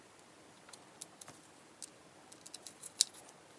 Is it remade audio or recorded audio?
recorded